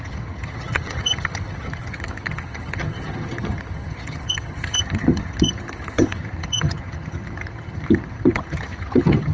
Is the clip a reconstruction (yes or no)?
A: yes